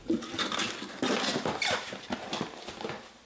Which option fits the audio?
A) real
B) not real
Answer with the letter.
A